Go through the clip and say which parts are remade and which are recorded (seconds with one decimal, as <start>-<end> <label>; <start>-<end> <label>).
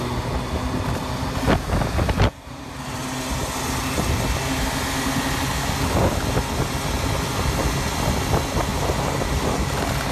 0.0-2.4 recorded; 2.4-3.0 remade; 3.0-8.7 recorded; 8.7-9.5 remade; 9.5-10.1 recorded